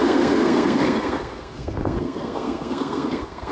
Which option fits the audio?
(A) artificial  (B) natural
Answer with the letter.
A